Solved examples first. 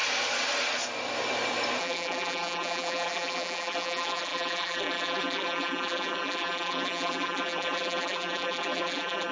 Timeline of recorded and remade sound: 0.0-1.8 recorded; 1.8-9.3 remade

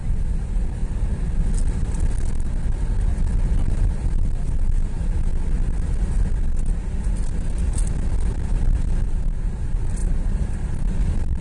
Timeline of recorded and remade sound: 0.0-0.8 remade; 0.8-3.7 recorded; 3.7-5.3 remade; 5.3-8.3 recorded; 8.3-11.4 remade

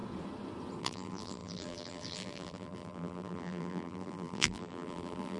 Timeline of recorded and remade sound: 0.0-0.8 recorded; 0.8-5.4 remade

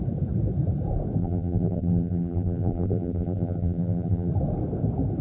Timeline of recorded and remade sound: 0.0-1.2 recorded; 1.2-4.3 remade; 4.3-5.2 recorded

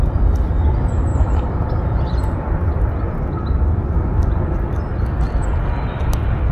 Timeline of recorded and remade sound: 0.0-1.1 recorded; 1.1-2.8 remade; 2.8-6.5 recorded

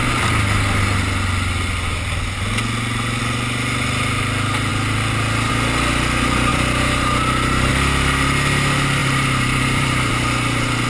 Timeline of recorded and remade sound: 0.0-6.5 recorded; 6.5-7.7 remade; 7.7-9.0 recorded; 9.0-10.1 remade; 10.1-10.9 recorded

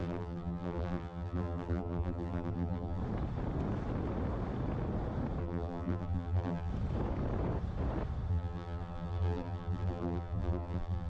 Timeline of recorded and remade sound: 0.0-3.0 remade; 3.0-5.4 recorded; 5.4-6.7 remade; 6.7-8.3 recorded; 8.3-11.1 remade